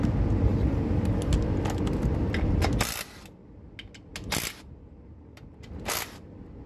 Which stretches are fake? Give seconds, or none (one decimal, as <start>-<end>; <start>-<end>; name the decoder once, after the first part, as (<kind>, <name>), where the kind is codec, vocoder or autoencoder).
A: none

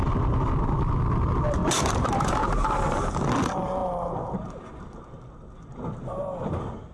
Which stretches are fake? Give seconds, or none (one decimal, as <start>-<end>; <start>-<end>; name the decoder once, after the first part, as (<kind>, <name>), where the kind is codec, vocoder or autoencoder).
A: 1.6-3.1 (vocoder, BigVGAN v2)

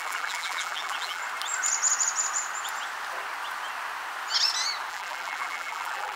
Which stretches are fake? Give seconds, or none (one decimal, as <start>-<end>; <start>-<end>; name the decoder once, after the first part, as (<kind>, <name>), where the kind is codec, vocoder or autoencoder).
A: 0.0-1.2 (vocoder, BigVGAN v2); 4.9-6.2

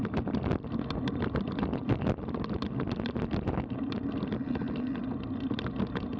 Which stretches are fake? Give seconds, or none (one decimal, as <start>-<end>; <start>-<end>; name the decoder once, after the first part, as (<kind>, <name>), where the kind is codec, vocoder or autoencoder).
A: none